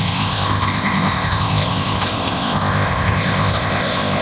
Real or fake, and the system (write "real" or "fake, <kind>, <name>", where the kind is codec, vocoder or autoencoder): fake, codec, ZipCodec